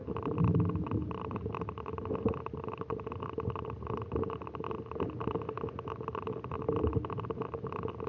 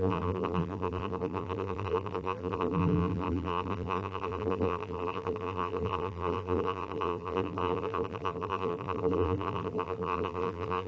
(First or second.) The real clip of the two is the first